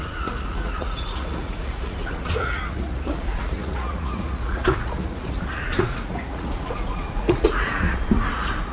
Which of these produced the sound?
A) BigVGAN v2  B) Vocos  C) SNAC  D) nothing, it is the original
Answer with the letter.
B